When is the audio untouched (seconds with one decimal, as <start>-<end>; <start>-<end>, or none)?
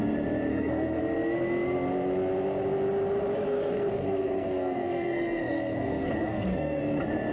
0.0-0.5; 1.0-3.5; 6.8-7.3